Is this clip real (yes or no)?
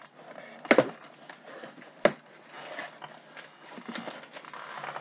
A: yes